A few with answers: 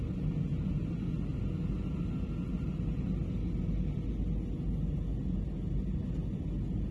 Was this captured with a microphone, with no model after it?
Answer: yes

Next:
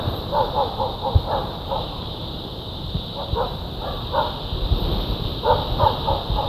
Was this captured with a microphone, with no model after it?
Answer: yes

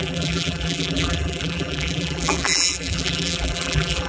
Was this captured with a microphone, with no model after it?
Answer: no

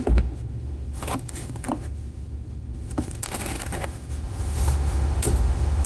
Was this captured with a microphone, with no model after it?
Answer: no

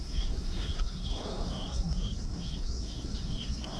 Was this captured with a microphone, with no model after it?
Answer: no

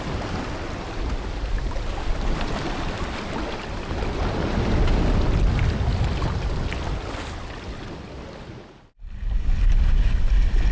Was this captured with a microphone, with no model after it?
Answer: yes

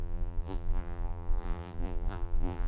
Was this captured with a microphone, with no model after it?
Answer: no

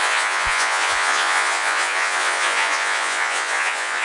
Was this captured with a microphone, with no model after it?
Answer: no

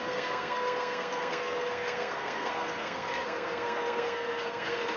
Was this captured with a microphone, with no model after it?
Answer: no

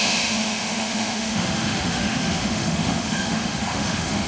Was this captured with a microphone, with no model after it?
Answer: no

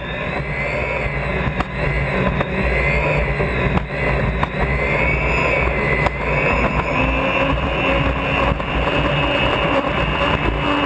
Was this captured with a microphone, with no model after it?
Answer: yes